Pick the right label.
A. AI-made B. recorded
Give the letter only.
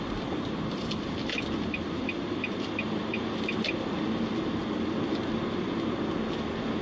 B